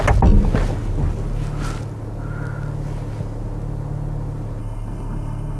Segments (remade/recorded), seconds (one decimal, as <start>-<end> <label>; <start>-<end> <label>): 0.0-4.6 recorded; 4.6-5.6 remade